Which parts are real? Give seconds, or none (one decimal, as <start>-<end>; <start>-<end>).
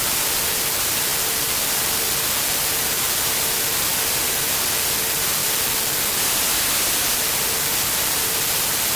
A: 5.4-6.9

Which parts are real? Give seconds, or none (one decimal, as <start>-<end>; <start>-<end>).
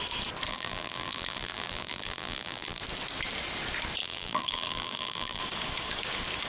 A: 0.0-0.5; 2.8-4.0; 5.4-6.5